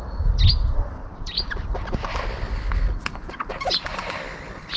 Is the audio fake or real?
real